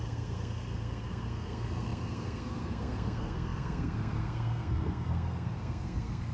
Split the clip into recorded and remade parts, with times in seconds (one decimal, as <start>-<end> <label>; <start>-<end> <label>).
0.0-6.3 remade